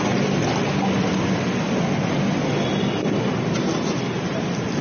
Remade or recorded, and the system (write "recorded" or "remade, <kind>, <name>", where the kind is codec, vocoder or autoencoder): recorded